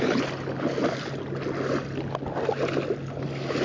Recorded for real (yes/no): yes